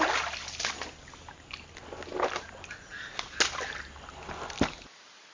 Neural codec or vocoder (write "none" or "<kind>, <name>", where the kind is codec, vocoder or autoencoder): none